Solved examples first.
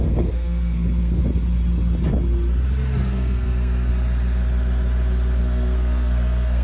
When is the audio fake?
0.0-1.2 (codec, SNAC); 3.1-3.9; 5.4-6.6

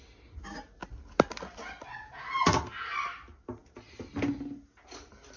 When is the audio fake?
none

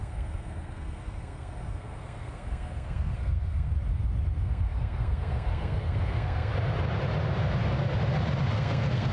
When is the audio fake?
0.0-3.7 (codec, SNAC); 4.4-6.5; 8.5-9.1

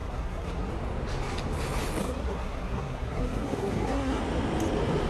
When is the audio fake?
0.0-0.7 (codec, SNAC); 2.0-4.2

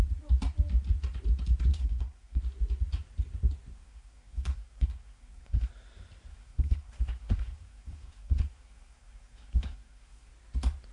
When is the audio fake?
1.7-2.4 (codec, SNAC); 3.7-5.7; 6.3-10.3